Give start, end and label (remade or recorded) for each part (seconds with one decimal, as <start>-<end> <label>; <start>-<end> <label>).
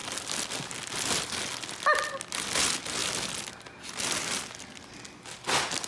0.0-5.9 recorded